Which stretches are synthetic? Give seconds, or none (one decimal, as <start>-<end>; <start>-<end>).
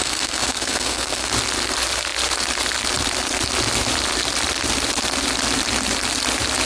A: 0.0-1.3